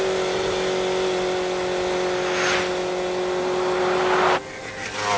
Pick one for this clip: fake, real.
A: real